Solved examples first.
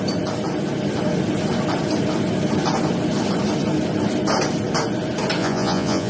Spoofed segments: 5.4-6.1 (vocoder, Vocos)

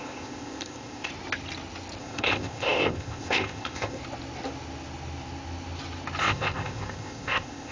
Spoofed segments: 0.0-1.1 (codec, ZipCodec); 2.0-4.0; 6.2-7.7

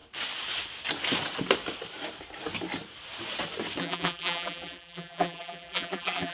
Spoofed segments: 3.8-6.3 (vocoder, BigVGAN v2)

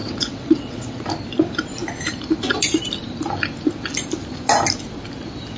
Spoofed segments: 0.0-1.0 (vocoder, WaveNeXt)

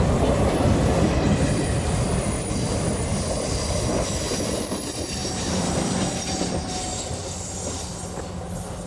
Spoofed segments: 0.0-7.2 (vocoder, BigVGAN v2)